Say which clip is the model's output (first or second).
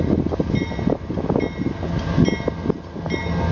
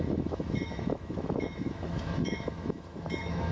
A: second